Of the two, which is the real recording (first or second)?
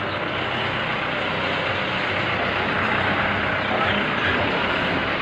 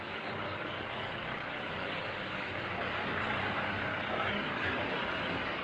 first